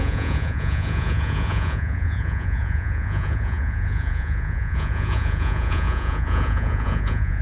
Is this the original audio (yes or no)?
no